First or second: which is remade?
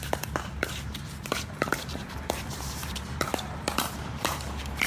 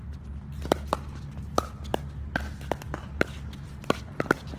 first